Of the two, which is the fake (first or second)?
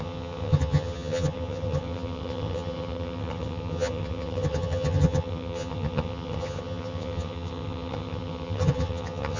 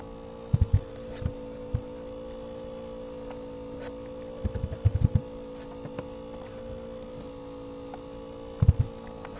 first